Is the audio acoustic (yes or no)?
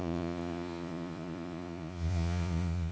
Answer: no